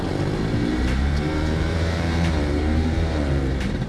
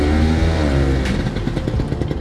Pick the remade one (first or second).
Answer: first